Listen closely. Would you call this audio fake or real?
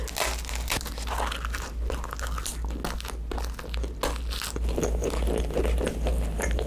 real